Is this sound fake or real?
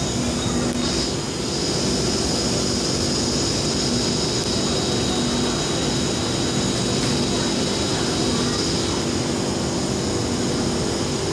real